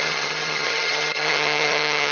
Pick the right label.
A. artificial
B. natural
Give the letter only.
A